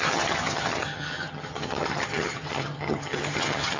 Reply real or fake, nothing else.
fake